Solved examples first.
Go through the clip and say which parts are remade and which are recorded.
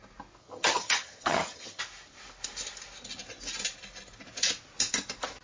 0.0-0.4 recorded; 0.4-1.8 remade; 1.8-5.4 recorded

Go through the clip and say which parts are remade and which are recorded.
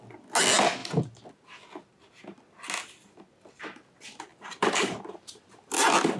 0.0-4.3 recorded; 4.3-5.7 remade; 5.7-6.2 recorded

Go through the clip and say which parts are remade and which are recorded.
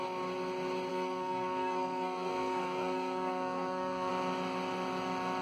0.0-0.9 recorded; 0.9-4.1 remade; 4.1-5.4 recorded